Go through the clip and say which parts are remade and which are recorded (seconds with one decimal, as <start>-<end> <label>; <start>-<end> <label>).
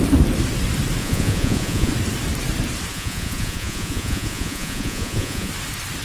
0.0-1.0 recorded; 1.0-1.9 remade; 1.9-2.9 recorded; 2.9-5.5 remade; 5.5-6.0 recorded